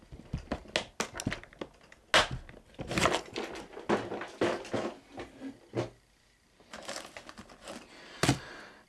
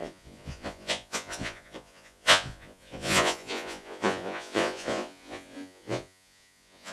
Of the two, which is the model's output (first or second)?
second